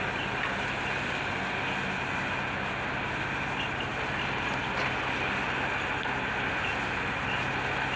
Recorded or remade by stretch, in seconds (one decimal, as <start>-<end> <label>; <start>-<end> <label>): 0.0-8.0 recorded